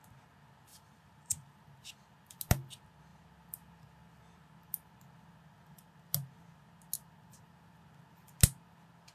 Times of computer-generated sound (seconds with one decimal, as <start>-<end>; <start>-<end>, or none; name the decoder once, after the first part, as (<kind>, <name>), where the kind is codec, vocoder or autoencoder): 0.7-1.6 (vocoder, BigVGAN v2)